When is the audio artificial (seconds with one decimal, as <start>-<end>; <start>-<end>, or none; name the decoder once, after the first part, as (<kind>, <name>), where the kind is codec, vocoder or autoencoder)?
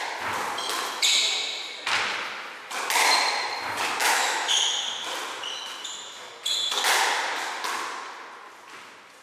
4.0-4.8 (autoencoder, DAC-VAE)